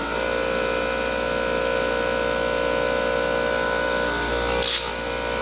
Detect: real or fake real